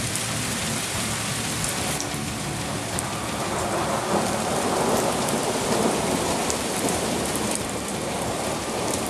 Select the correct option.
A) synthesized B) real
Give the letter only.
A